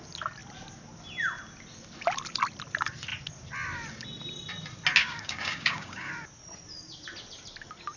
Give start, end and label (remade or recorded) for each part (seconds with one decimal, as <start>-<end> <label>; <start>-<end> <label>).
0.0-5.0 recorded; 5.0-6.1 remade; 6.1-8.0 recorded